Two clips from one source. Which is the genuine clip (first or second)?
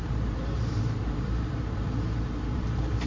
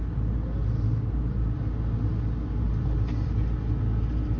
second